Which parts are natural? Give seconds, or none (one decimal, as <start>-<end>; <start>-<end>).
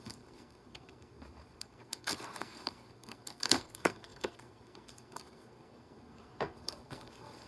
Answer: none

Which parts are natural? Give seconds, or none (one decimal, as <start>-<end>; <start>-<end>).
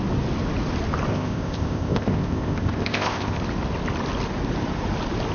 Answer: 0.0-1.1; 3.4-5.3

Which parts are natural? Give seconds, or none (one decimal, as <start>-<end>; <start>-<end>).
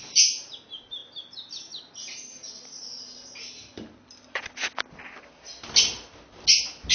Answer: 0.0-6.9